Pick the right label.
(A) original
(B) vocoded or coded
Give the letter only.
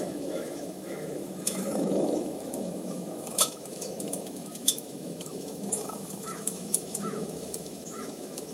B